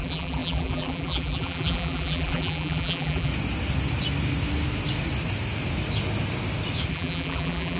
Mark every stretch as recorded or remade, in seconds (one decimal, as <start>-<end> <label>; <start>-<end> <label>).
0.0-3.3 remade; 3.3-6.9 recorded; 6.9-7.8 remade